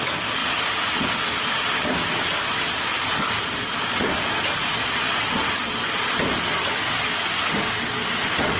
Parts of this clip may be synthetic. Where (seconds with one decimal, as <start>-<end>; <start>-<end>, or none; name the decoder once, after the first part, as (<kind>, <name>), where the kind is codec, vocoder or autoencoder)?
0.4-3.9 (vocoder, BigVGAN v2)